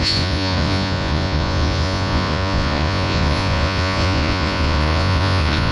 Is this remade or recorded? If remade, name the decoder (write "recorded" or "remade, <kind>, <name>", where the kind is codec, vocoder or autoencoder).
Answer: remade, vocoder, Vocos